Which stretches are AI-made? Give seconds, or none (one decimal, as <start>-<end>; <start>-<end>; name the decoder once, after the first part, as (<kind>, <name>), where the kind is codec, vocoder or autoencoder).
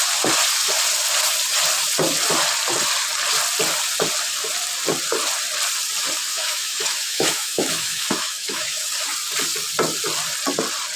6.3-8.9 (autoencoder, DAC-VAE)